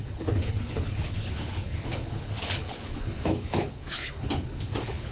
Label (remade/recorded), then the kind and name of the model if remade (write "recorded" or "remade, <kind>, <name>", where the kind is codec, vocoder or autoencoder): remade, codec, HILCodec